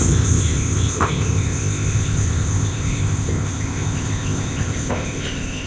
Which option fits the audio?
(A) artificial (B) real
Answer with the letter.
A